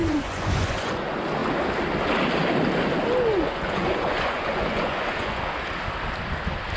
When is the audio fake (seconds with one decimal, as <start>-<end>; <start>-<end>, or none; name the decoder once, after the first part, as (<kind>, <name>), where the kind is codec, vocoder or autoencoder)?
0.0-1.0 (vocoder, Vocos); 3.3-5.4